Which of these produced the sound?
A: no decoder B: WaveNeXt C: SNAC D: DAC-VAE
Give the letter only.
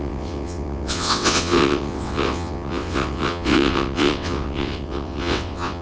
B